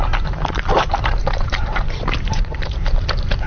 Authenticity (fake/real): fake